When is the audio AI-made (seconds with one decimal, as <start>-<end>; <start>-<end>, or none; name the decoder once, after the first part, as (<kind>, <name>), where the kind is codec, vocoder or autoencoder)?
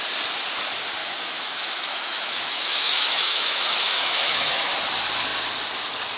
1.0-4.7 (autoencoder, DAC-VAE)